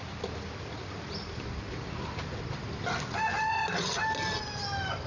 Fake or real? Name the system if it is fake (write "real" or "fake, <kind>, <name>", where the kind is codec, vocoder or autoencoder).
real